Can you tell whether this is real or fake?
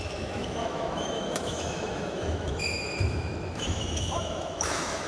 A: fake